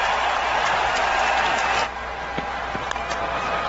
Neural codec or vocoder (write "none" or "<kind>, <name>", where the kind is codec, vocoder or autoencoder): none